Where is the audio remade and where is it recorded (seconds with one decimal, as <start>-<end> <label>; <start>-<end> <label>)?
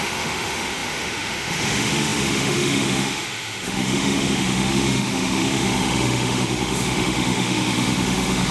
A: 0.0-8.5 remade